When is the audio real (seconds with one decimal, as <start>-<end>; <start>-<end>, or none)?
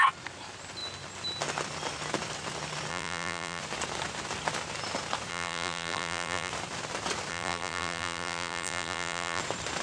0.0-2.9; 3.6-5.3; 6.5-7.3; 9.4-9.8